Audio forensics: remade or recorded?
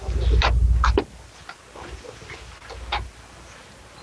recorded